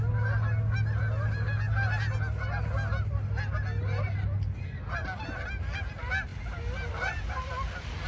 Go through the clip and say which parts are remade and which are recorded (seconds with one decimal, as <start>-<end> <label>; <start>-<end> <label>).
0.0-8.1 recorded